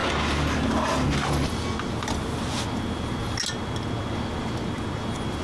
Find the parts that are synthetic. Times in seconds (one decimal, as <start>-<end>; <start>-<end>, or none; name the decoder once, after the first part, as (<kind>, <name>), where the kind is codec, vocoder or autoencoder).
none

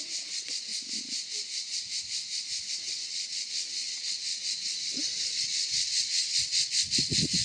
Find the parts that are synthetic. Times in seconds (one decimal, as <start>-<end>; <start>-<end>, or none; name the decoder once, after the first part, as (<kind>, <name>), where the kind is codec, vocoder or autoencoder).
0.0-0.7 (vocoder, WaveNeXt); 2.7-7.4

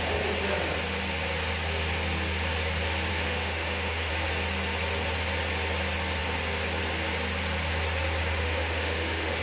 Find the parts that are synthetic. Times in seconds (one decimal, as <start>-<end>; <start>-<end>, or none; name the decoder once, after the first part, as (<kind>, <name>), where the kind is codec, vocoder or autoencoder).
3.1-4.1 (autoencoder, DAC-VAE); 8.4-9.4

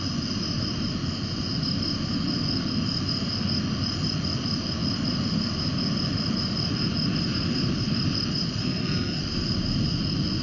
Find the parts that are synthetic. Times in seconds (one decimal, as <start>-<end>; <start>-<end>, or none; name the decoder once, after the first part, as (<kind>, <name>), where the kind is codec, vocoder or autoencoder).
8.6-9.2 (codec, SNAC)